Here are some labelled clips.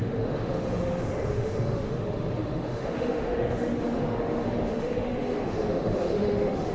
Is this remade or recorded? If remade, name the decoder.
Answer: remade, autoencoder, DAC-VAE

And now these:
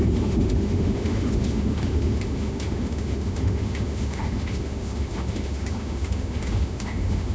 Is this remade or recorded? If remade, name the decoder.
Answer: remade, autoencoder, DAC-VAE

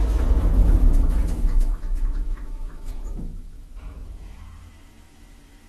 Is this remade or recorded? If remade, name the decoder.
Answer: remade, autoencoder, DAC-VAE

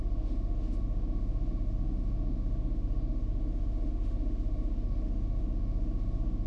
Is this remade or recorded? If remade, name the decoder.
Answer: remade, autoencoder, DAC-VAE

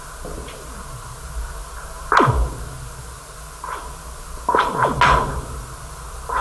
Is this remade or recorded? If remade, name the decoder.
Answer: recorded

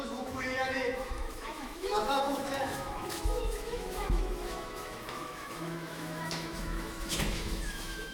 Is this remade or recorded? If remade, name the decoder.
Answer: remade, autoencoder, DAC-VAE